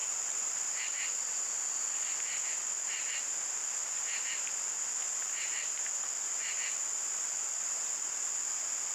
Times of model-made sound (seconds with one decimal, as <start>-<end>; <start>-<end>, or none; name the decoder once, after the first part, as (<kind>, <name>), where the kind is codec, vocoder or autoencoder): 0.0-0.7 (vocoder, BigVGAN v2)